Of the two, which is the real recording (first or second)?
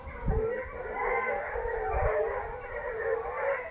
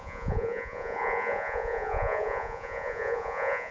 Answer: first